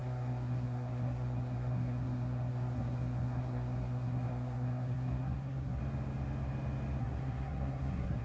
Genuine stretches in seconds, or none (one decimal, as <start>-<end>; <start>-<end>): 5.8-7.0